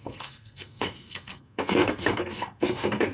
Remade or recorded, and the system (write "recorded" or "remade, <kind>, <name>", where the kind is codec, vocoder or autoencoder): remade, codec, SNAC